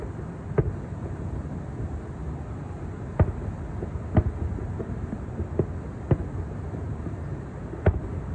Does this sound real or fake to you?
real